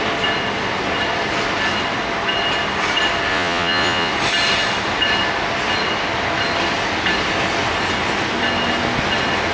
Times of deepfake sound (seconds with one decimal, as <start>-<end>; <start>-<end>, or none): 3.3-4.1